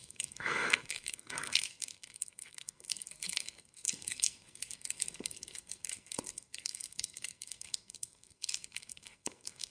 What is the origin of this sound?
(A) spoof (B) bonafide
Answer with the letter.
A